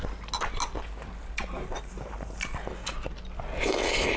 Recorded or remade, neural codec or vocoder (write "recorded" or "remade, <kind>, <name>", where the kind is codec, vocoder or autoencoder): recorded